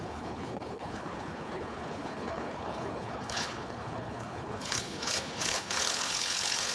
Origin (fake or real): fake